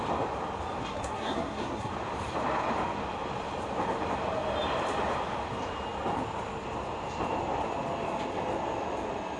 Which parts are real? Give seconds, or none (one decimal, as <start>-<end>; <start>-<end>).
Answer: 0.0-0.8; 1.9-9.4